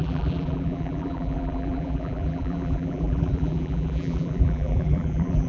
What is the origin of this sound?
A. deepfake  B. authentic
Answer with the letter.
A